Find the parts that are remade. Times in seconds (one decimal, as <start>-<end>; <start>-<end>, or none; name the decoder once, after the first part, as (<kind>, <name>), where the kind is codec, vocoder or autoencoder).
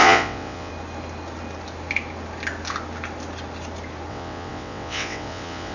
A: 0.0-0.7 (vocoder, WaveNeXt); 4.1-5.7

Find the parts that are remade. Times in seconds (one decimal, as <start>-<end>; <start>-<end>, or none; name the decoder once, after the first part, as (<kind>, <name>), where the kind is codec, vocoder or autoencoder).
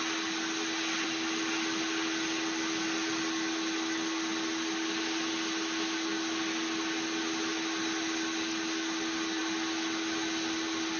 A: none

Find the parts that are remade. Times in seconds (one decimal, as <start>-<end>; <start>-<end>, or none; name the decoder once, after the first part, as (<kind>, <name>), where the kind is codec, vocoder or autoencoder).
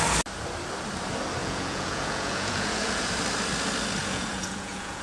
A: 1.4-3.1 (vocoder, Vocos); 4.0-5.0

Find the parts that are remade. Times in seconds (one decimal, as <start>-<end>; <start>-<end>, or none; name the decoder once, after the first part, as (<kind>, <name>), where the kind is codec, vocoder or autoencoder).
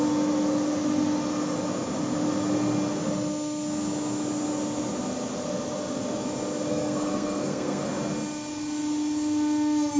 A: 6.7-7.9 (codec, SNAC)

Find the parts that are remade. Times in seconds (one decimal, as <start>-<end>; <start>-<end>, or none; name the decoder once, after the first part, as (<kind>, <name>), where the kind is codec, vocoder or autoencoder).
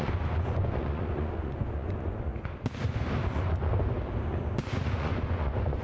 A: 0.0-2.3 (vocoder, Vocos); 3.3-3.7; 4.8-5.8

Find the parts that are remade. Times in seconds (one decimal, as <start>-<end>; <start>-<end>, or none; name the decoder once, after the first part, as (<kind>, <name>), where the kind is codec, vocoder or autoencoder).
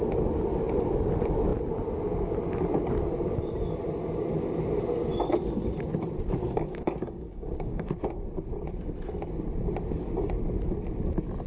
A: 6.4-7.9 (codec, DAC)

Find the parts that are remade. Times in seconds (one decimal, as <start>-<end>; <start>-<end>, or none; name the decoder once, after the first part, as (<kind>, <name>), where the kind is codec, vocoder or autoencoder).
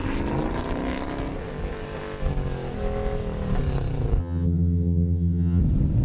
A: 4.2-5.6 (vocoder, HiFi-GAN)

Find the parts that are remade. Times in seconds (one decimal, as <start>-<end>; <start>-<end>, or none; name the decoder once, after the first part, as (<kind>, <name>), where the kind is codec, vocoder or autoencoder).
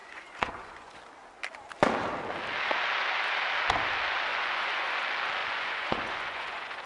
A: 0.0-1.0 (vocoder, Vocos); 4.3-5.0; 5.4-6.9